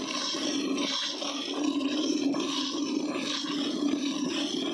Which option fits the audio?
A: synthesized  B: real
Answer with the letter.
B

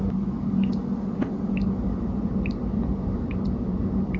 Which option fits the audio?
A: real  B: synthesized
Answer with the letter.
A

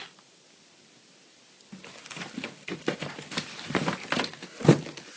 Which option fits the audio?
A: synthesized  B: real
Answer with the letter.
B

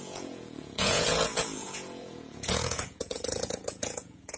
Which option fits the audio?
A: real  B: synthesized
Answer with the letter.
B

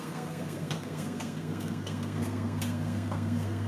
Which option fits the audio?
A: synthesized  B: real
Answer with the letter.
A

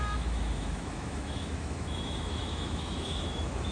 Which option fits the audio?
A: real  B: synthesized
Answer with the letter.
B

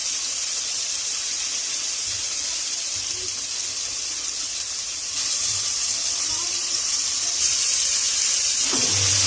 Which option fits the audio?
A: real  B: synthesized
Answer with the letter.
A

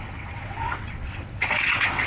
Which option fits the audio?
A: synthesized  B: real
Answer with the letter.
A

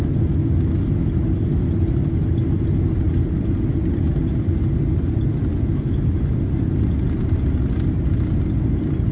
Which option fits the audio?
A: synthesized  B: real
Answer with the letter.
B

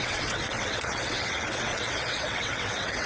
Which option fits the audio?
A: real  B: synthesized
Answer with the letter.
B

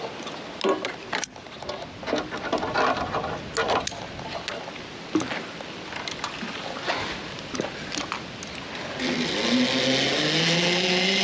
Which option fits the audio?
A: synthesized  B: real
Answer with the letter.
B